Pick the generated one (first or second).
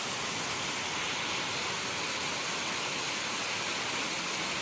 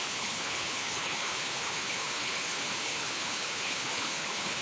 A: second